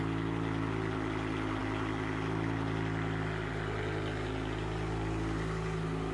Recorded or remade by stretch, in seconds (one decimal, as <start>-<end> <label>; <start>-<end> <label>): 0.0-6.1 recorded